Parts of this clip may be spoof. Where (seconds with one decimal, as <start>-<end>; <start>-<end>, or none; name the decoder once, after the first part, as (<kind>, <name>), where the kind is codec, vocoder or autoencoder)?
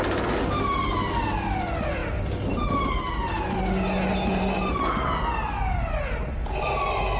none